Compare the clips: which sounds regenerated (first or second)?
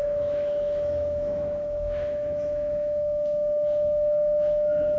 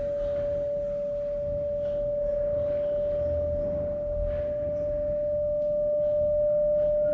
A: first